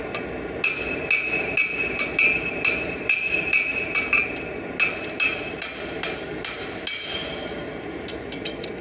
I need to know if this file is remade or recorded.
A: recorded